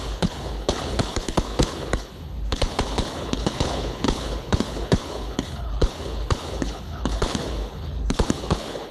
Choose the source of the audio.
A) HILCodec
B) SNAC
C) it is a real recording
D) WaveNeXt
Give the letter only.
A